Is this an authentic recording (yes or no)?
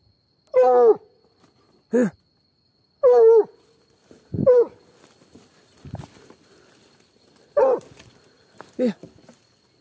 yes